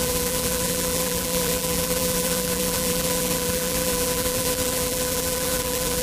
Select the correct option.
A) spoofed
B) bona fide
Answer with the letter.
A